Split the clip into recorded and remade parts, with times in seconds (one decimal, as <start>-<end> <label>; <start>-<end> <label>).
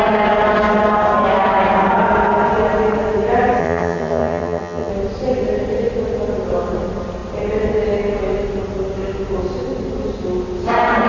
0.0-3.6 recorded; 3.6-4.9 remade; 4.9-11.1 recorded